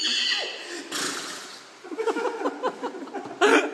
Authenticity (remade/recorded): recorded